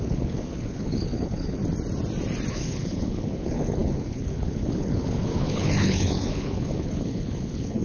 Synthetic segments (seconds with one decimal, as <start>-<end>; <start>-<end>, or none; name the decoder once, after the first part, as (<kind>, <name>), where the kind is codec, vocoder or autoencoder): 0.0-1.6 (codec, HILCodec); 2.5-7.8